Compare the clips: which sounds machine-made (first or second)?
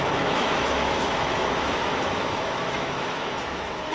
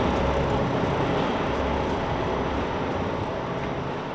first